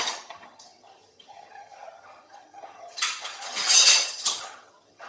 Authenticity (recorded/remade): remade